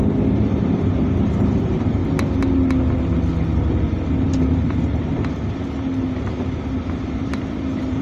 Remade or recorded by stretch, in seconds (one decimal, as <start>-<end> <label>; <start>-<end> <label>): 0.0-2.0 remade; 2.0-6.3 recorded; 6.3-8.0 remade